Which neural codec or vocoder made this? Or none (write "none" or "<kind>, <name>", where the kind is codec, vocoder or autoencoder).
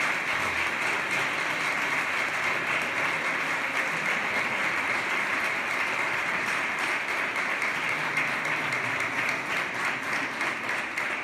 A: none